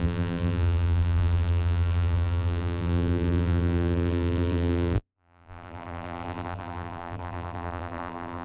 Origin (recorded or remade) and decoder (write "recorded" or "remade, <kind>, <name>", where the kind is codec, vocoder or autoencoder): remade, vocoder, BigVGAN v2